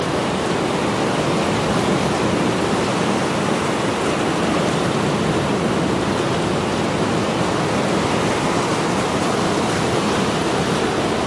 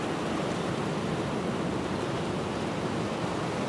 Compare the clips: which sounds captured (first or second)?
first